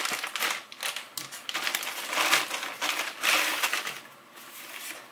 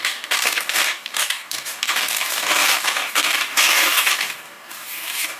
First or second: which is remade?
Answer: second